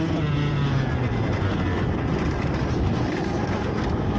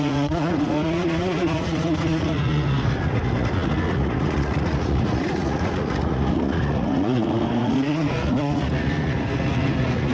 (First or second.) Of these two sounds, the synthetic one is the second